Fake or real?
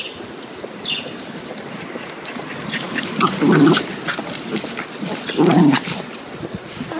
real